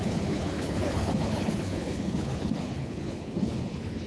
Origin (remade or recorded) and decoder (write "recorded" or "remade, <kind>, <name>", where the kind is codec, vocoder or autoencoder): remade, codec, HILCodec